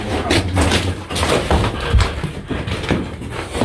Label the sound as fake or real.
real